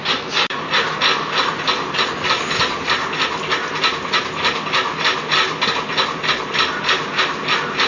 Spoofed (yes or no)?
no